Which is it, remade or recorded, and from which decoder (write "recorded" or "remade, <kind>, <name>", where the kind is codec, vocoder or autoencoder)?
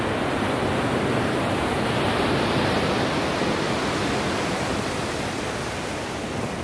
recorded